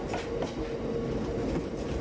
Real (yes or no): yes